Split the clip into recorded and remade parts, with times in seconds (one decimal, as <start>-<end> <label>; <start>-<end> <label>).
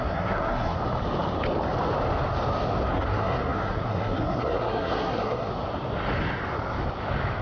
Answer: 0.0-0.8 remade; 0.8-2.9 recorded; 2.9-5.5 remade; 5.5-7.4 recorded